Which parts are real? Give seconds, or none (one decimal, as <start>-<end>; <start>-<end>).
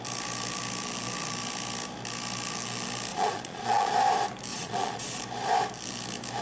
0.0-3.1; 3.9-4.5; 5.2-6.4